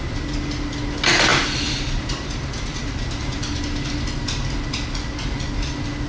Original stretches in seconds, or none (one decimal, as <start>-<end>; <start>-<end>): 0.0-1.3; 3.6-6.1